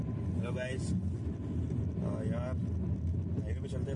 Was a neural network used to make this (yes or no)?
no